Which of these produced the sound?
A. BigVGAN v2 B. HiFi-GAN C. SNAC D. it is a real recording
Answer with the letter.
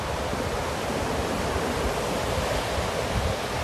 D